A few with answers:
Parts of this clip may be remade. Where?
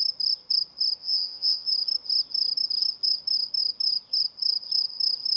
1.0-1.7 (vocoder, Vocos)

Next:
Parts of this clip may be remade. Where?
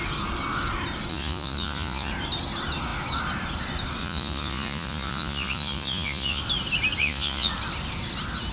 1.1-2.1 (vocoder, Vocos); 4.0-6.4; 7.0-7.5